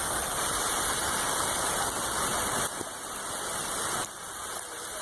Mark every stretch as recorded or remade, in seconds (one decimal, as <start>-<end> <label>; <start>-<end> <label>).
0.0-5.0 recorded